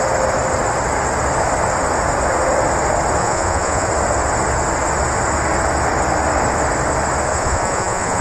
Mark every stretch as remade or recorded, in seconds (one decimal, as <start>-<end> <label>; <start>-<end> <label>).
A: 0.0-3.2 recorded; 3.2-3.9 remade; 3.9-7.3 recorded; 7.3-8.2 remade